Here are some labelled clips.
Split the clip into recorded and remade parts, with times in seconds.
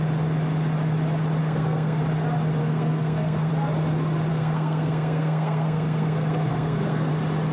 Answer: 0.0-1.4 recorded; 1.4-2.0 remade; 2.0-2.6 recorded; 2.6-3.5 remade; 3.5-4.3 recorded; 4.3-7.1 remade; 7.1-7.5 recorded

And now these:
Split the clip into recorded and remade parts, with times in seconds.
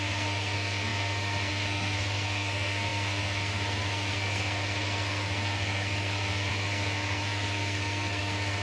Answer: 0.0-8.6 remade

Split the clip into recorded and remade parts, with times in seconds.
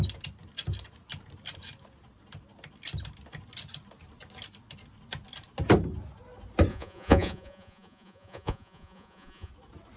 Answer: 0.0-6.7 recorded; 6.7-9.5 remade; 9.5-10.0 recorded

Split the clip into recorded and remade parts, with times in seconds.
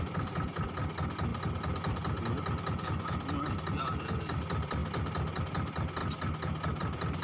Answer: 0.0-4.8 remade; 4.8-5.4 recorded; 5.4-6.0 remade; 6.0-6.8 recorded; 6.8-7.2 remade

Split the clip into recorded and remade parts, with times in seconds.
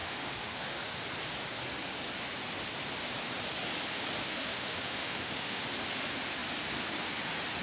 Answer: 0.0-1.0 remade; 1.0-4.2 recorded; 4.2-5.6 remade; 5.6-7.6 recorded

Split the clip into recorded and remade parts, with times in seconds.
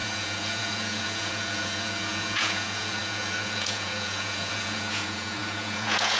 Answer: 0.0-6.2 remade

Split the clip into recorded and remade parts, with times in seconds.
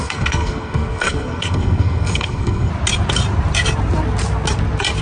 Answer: 0.0-2.7 remade; 2.7-5.0 recorded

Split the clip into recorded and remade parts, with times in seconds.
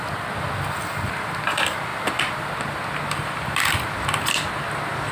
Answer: 0.0-5.1 recorded